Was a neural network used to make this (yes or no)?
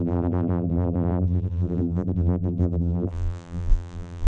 yes